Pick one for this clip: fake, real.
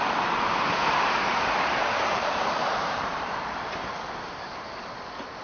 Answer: fake